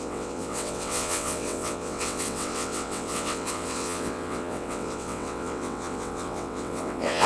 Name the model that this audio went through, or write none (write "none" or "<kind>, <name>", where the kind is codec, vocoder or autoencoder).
vocoder, WaveNeXt